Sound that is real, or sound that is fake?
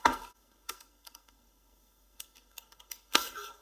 fake